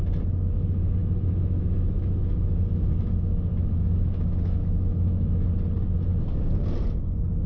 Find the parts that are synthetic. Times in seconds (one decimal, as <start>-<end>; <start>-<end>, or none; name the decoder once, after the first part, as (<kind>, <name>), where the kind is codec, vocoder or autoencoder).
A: 1.0-5.5 (autoencoder, DAC-VAE)